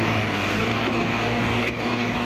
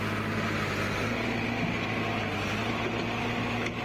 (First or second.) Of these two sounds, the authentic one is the second